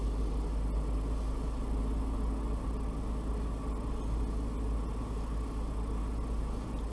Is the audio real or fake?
real